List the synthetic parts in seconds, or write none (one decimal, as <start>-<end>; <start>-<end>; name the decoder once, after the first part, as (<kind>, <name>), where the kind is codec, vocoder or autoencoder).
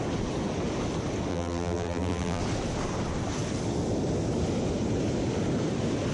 1.3-2.4 (vocoder, BigVGAN v2)